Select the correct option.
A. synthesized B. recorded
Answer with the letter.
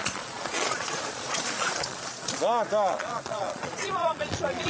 A